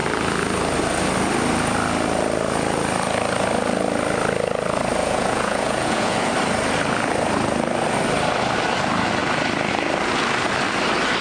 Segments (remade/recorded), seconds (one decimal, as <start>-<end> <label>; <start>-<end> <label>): 0.0-5.0 recorded; 5.0-6.3 remade; 6.3-11.2 recorded